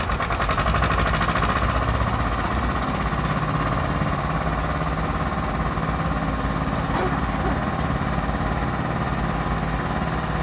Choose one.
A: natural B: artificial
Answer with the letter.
A